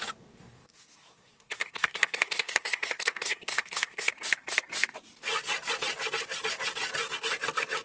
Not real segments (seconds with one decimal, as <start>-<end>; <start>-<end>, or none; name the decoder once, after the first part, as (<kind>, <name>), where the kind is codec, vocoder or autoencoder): 0.0-4.1 (codec, SNAC)